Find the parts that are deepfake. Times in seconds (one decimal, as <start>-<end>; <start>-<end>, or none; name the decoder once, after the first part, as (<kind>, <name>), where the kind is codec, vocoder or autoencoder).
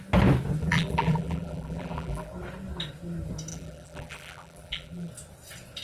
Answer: 0.6-2.3 (vocoder, BigVGAN v2); 3.5-5.1